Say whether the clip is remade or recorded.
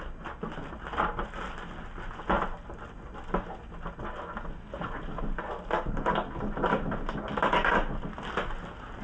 recorded